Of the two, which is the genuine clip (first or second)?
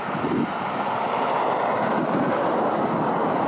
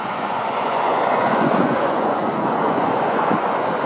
first